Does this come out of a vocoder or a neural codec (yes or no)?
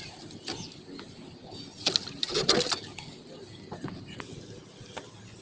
no